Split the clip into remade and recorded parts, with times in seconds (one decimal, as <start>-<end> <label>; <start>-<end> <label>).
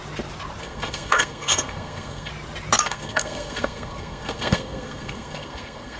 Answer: 0.0-0.6 recorded; 0.6-2.3 remade; 2.3-2.8 recorded; 2.8-6.0 remade